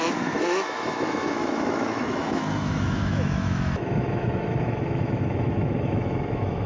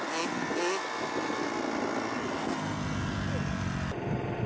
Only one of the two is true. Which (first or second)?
second